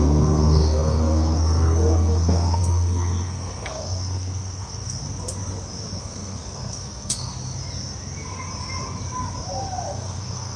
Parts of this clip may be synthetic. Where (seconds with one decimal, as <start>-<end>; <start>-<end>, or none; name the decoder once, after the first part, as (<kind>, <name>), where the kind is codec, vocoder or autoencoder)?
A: 0.0-5.0 (codec, SNAC); 6.0-7.3; 9.9-10.6